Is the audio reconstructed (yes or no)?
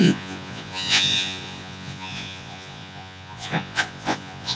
yes